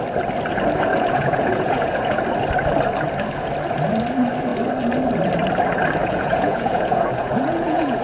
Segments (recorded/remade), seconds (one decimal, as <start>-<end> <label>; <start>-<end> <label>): 0.0-0.9 recorded; 0.9-2.2 remade; 2.2-6.0 recorded; 6.0-8.0 remade